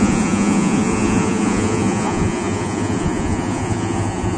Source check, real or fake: fake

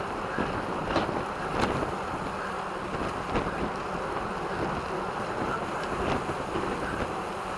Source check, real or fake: real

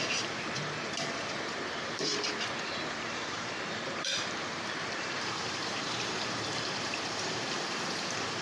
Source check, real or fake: fake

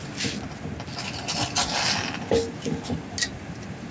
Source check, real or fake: real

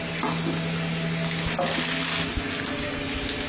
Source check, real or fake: real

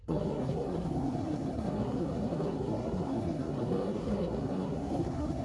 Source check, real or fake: fake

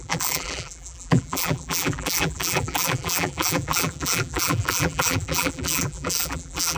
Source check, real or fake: fake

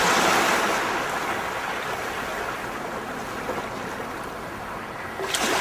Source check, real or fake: real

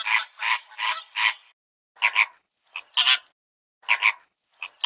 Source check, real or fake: real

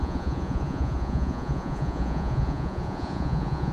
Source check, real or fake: fake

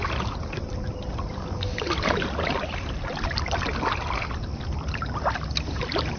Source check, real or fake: real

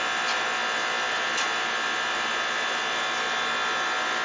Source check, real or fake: real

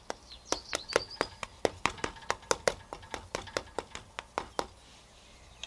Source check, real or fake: real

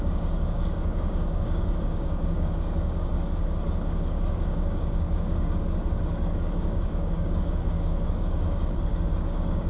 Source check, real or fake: fake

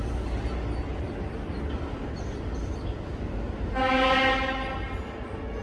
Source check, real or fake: real